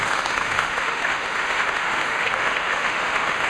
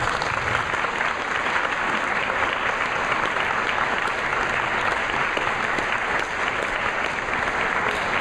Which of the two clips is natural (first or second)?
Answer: second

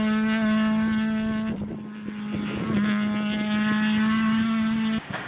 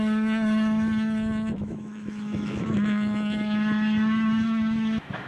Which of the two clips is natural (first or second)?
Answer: first